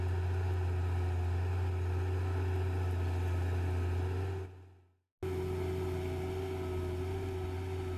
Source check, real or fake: real